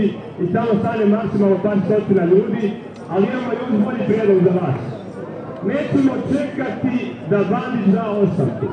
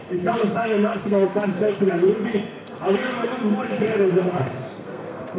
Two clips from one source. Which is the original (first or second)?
first